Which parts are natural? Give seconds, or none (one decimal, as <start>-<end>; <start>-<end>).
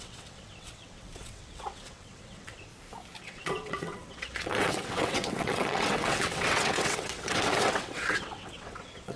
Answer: 2.7-3.2